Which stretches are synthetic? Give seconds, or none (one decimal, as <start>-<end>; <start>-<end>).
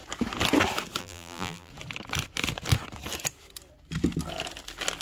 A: 1.0-1.7